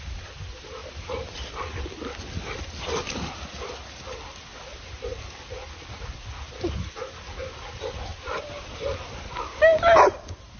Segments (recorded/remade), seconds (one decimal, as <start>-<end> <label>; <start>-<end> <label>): 0.0-0.8 recorded; 0.8-1.8 remade; 1.8-4.5 recorded; 4.5-5.7 remade; 5.7-8.1 recorded; 8.1-8.6 remade; 8.6-9.7 recorded; 9.7-10.6 remade